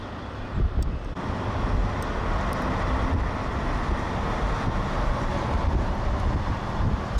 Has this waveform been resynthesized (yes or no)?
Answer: no